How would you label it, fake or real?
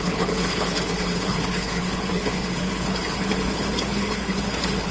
fake